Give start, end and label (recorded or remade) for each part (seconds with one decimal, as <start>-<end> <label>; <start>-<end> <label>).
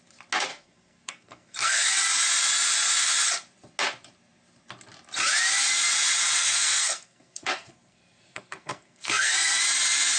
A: 0.0-0.5 recorded; 0.5-1.9 remade; 1.9-6.4 recorded; 6.4-9.6 remade; 9.6-10.2 recorded